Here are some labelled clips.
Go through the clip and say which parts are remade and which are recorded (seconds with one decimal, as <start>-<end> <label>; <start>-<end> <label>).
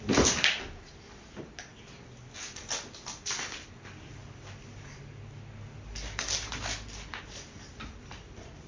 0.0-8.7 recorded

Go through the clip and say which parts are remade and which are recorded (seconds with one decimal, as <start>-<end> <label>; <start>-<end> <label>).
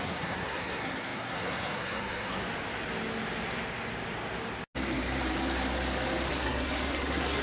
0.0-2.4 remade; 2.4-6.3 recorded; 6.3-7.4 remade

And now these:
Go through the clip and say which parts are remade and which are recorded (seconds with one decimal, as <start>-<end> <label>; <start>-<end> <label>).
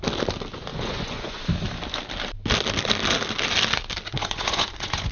0.0-0.7 recorded; 0.7-1.4 remade; 1.4-4.2 recorded; 4.2-5.1 remade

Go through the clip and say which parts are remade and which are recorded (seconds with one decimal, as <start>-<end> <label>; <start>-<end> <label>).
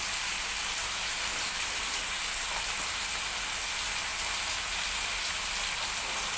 0.0-6.4 recorded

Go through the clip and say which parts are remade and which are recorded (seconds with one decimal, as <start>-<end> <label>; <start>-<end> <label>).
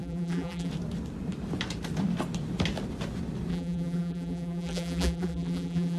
0.0-0.7 remade; 0.7-3.5 recorded; 3.5-6.0 remade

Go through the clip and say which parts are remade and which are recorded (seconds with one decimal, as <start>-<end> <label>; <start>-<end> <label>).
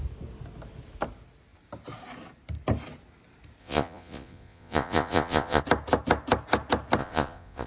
0.0-3.6 recorded; 3.6-5.6 remade; 5.6-7.0 recorded; 7.0-7.7 remade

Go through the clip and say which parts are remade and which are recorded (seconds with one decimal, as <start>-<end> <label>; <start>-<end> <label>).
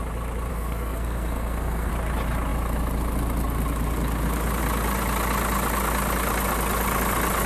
0.0-0.5 recorded; 0.5-1.9 remade; 1.9-7.5 recorded